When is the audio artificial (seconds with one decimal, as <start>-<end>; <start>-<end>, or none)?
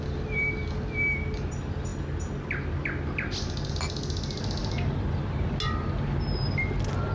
none